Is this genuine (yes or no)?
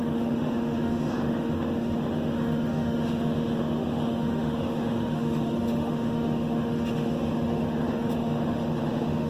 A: no